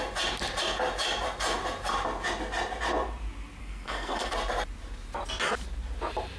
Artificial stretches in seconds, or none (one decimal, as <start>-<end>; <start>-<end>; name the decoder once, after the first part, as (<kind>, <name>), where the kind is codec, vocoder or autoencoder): 3.6-4.3 (codec, SNAC)